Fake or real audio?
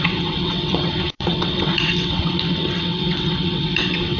fake